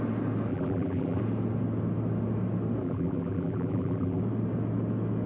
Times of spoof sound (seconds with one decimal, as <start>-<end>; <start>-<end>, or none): 0.5-1.2; 2.8-4.2